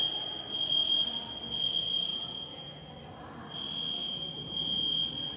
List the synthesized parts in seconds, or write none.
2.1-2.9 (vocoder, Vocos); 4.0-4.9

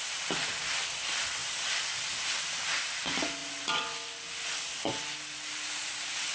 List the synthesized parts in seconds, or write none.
none

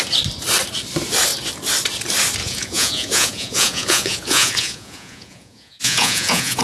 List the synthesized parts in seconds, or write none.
2.4-6.6 (vocoder, Vocos)

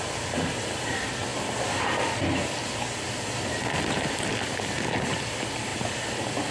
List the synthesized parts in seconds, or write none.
none